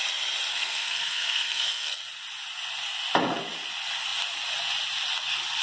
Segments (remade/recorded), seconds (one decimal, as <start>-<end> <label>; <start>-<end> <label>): 0.0-0.5 recorded; 0.5-1.9 remade; 1.9-5.6 recorded